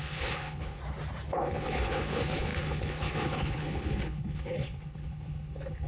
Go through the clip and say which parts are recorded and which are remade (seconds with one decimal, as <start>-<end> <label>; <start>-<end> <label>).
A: 0.0-0.8 remade; 0.8-1.3 recorded; 1.3-5.9 remade